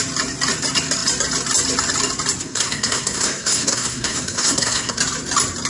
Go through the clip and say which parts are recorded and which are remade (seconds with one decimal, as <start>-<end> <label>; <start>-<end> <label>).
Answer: 0.0-2.4 recorded; 2.4-5.0 remade; 5.0-5.7 recorded